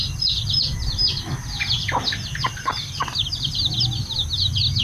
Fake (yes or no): no